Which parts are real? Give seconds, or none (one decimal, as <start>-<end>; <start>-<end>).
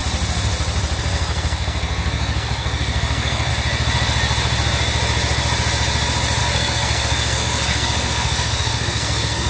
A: 0.0-1.0; 3.5-6.4